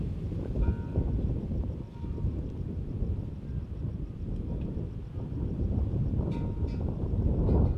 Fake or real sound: real